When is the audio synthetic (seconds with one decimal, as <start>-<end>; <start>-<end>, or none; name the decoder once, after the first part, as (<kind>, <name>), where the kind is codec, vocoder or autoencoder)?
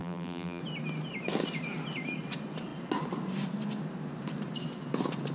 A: 0.0-0.6 (vocoder, BigVGAN v2)